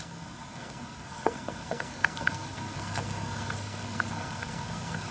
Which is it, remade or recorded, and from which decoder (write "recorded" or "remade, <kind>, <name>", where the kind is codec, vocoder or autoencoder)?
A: remade, codec, SNAC